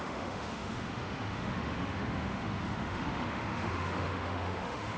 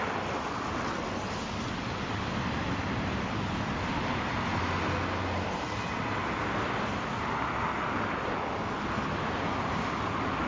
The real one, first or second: second